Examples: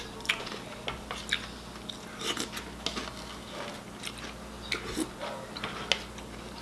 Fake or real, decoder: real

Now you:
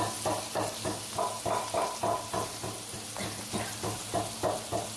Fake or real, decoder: real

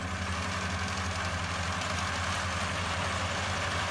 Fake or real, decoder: real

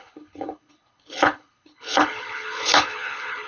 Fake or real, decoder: fake, codec, HILCodec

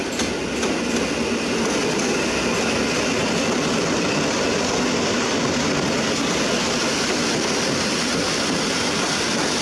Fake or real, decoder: real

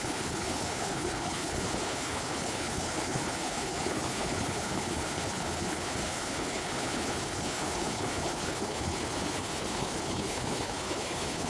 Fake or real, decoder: fake, codec, HILCodec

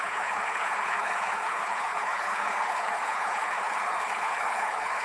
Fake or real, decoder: fake, codec, HILCodec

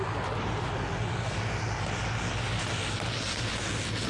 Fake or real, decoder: real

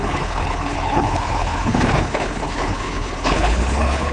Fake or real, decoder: fake, codec, HILCodec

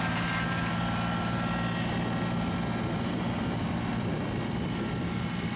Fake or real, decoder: real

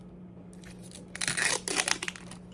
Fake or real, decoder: real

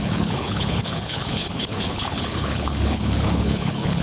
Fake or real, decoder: fake, codec, HILCodec